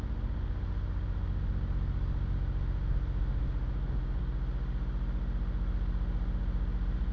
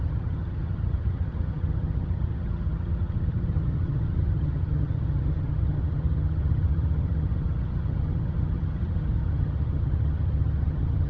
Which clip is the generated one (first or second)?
second